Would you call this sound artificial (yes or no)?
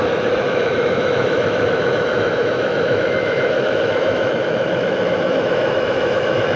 yes